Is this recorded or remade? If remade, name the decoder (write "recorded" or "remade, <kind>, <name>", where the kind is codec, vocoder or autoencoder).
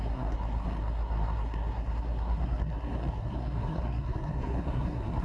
remade, codec, SNAC